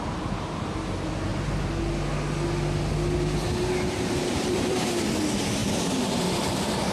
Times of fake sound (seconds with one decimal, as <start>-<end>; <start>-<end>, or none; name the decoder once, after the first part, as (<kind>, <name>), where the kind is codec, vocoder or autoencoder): 1.3-1.8 (vocoder, BigVGAN v2); 3.6-4.9; 5.6-6.9